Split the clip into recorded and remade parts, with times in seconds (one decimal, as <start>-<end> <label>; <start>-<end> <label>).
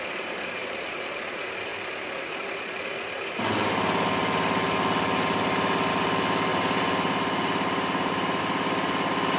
0.0-0.6 recorded; 0.6-1.2 remade; 1.2-6.5 recorded; 6.5-8.4 remade; 8.4-9.4 recorded